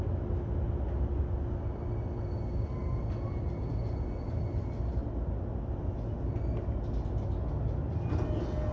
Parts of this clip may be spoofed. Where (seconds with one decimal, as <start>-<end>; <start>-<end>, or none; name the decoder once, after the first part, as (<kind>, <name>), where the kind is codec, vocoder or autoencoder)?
none